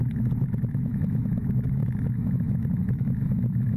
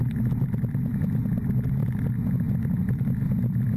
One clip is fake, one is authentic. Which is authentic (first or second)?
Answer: second